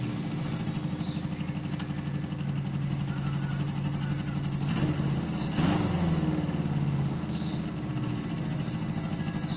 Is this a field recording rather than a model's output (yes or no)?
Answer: yes